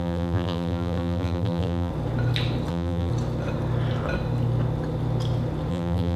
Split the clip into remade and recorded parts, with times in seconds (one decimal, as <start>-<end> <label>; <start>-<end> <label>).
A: 0.0-1.9 remade; 1.9-2.7 recorded; 2.7-3.1 remade; 3.1-5.7 recorded; 5.7-6.2 remade